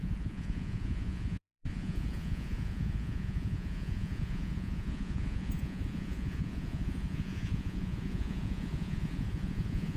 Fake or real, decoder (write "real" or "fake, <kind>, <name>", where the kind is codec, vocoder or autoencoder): fake, vocoder, Vocos